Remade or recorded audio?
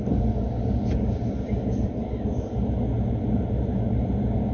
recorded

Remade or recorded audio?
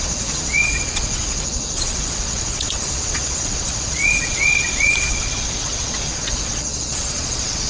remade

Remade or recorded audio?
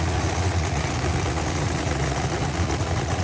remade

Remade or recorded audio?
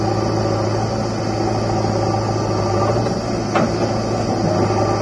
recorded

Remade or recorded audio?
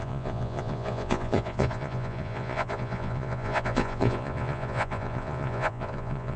remade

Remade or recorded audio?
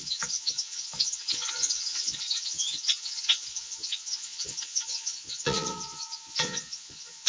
remade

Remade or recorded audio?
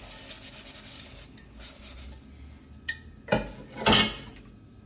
recorded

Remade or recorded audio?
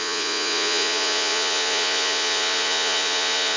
remade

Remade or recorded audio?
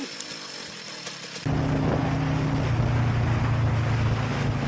recorded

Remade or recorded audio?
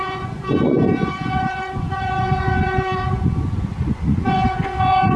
remade